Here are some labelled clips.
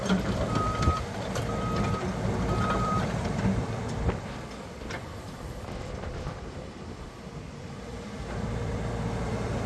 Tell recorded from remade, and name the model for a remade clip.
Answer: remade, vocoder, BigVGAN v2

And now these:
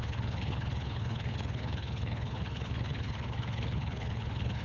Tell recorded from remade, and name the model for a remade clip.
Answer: remade, codec, HILCodec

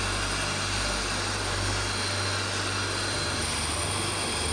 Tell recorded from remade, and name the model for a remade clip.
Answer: recorded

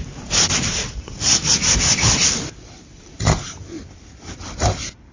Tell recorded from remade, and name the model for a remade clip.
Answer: recorded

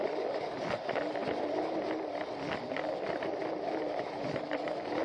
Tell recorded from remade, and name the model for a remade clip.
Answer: recorded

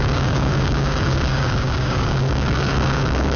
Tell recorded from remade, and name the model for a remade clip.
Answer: remade, codec, DAC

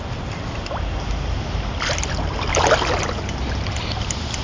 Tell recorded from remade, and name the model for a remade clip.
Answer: recorded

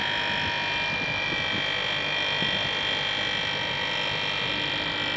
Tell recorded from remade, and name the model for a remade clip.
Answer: recorded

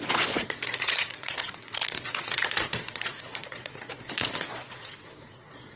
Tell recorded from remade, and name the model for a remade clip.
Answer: remade, vocoder, Vocos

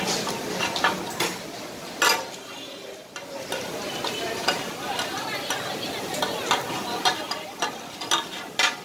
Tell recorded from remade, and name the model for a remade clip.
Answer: recorded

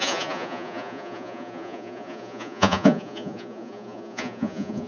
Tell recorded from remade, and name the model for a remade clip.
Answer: remade, vocoder, Vocos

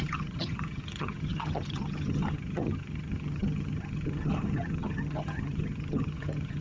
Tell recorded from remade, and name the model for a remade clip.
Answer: remade, vocoder, HiFi-GAN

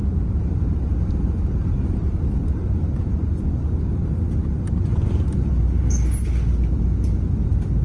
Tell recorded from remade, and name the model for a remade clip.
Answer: remade, vocoder, BigVGAN v2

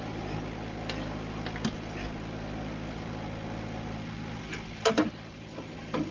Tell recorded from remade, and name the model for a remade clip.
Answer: recorded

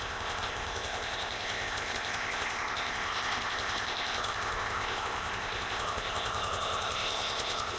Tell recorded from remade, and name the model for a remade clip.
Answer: remade, codec, ZipCodec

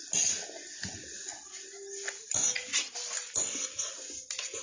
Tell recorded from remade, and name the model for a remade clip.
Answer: recorded